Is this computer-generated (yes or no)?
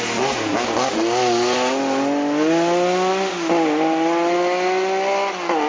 no